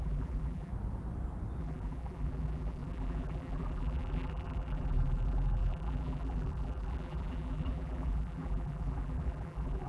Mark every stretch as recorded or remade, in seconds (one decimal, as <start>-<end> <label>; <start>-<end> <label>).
0.0-0.7 remade; 0.7-1.6 recorded; 1.6-9.9 remade